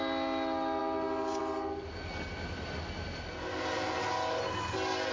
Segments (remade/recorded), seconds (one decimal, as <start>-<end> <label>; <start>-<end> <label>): 0.0-5.1 recorded